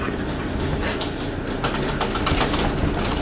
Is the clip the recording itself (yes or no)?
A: yes